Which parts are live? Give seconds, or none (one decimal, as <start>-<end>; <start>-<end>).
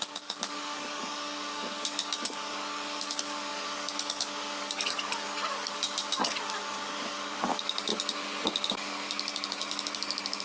7.9-8.7